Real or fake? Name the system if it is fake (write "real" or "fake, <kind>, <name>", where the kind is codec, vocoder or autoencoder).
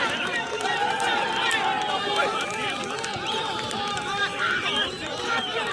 fake, vocoder, BigVGAN v2